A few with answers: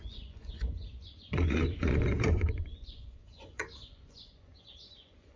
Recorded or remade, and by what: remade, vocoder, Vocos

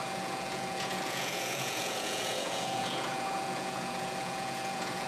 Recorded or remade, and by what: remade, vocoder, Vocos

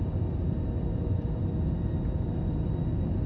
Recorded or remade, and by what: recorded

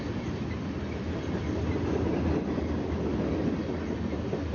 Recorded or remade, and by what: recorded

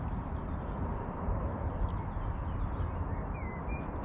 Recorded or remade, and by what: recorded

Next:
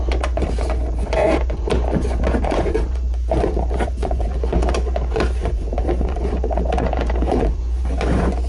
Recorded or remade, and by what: remade, vocoder, Vocos